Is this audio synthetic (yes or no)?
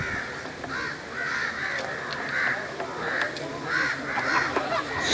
no